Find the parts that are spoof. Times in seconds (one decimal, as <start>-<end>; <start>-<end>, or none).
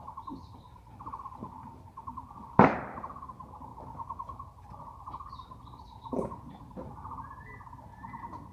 none